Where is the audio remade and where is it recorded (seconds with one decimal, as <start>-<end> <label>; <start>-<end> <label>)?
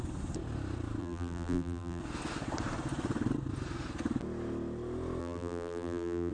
0.0-1.0 recorded; 1.0-2.0 remade; 2.0-5.2 recorded; 5.2-6.3 remade